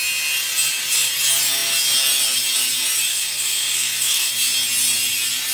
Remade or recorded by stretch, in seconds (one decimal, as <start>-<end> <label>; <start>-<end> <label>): 0.0-3.1 recorded; 3.1-4.3 remade; 4.3-5.5 recorded

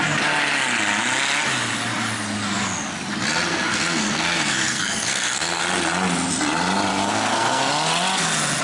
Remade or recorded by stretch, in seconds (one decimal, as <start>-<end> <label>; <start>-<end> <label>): 0.0-3.5 recorded; 3.5-5.6 remade; 5.6-6.9 recorded; 6.9-7.7 remade; 7.7-8.6 recorded

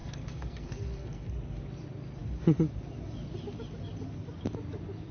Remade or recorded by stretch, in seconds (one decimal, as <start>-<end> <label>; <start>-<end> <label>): 0.0-1.3 remade; 1.3-5.1 recorded

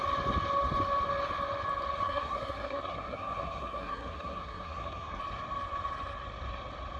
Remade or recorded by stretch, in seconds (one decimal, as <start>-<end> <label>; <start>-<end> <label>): 0.0-2.0 recorded; 2.0-5.2 remade; 5.2-7.0 recorded

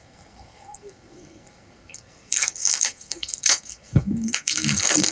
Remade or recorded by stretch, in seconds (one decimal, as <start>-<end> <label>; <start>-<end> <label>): 0.0-5.1 remade